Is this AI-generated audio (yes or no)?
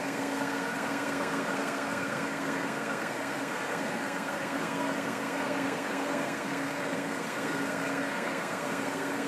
yes